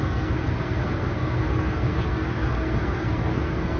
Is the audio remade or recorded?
remade